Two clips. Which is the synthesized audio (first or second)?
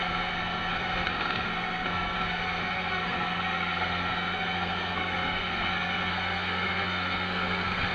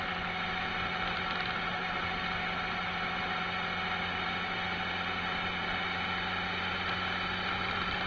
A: first